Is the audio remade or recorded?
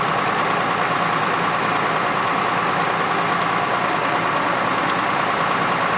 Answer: recorded